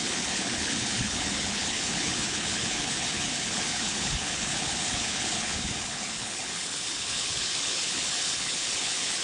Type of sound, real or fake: fake